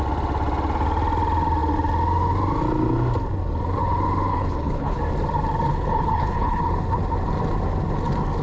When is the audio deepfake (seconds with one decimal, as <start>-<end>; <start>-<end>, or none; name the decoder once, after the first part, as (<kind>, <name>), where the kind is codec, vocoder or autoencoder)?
4.3-5.0 (codec, HILCodec); 5.7-6.6